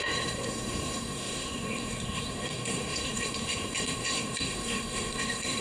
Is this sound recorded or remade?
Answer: remade